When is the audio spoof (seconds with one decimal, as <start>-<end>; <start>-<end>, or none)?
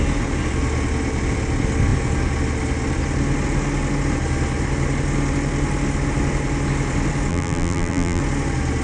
7.3-8.2